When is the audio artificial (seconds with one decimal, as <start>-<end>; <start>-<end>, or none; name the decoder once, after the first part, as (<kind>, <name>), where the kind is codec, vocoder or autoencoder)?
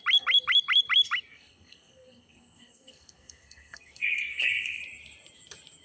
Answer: 1.3-4.8 (codec, SNAC)